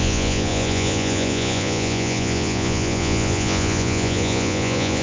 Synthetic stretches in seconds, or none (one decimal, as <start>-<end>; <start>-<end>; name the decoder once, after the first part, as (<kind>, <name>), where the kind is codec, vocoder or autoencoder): 0.0-5.0 (vocoder, Vocos)